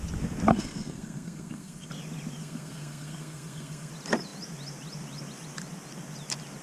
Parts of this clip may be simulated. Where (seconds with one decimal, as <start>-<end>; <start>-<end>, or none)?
0.5-1.9; 2.4-3.9